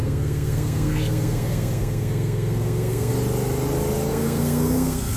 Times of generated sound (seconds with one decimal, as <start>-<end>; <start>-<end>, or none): 0.0-3.1; 4.1-5.2